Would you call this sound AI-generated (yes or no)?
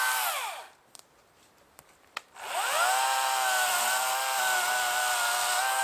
yes